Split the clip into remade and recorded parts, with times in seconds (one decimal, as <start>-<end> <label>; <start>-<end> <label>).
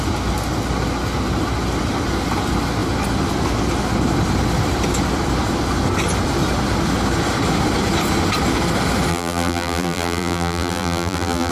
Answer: 0.0-9.1 recorded; 9.1-11.5 remade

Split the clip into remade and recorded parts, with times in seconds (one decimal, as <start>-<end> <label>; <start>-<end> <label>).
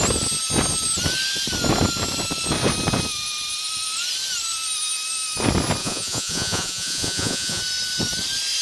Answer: 0.0-5.8 recorded; 5.8-7.6 remade; 7.6-8.6 recorded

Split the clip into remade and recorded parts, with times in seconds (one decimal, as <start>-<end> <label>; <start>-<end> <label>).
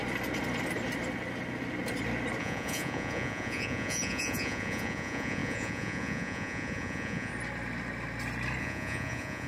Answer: 0.0-2.4 recorded; 2.4-7.3 remade; 7.3-8.6 recorded; 8.6-9.5 remade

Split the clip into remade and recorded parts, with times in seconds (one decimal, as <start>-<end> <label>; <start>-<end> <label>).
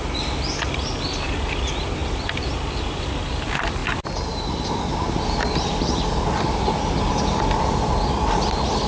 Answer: 0.0-8.9 recorded